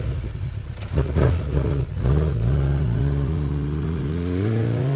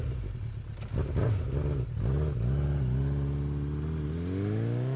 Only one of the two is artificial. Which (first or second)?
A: first